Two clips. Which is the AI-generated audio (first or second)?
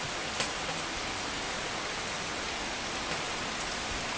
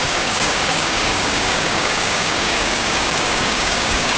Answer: second